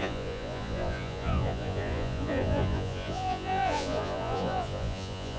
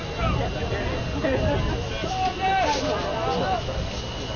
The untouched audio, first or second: second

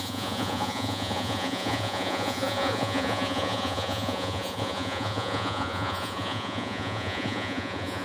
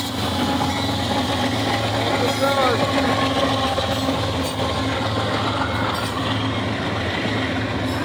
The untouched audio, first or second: second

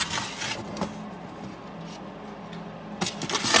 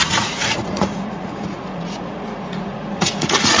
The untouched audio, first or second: first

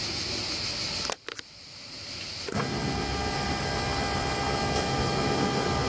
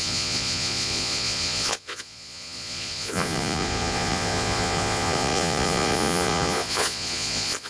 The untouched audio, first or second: first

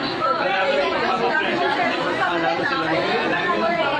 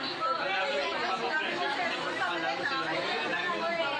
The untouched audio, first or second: second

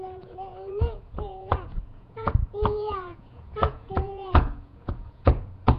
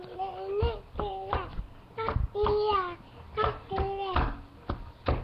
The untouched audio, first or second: second